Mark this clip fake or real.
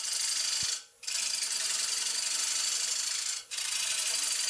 real